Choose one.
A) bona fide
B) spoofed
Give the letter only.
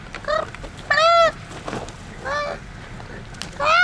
A